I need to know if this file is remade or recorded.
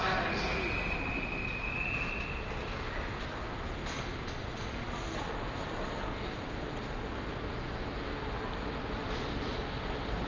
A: recorded